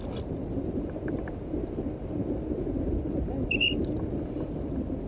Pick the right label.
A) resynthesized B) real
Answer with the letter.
B